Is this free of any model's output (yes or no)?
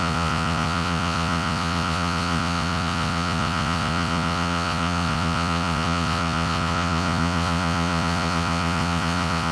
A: no